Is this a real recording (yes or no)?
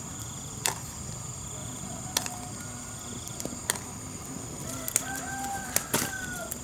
yes